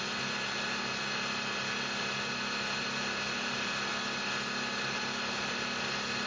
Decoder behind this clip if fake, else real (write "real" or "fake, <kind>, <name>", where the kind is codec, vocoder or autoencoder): real